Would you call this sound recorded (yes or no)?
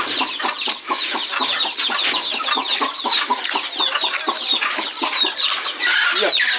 yes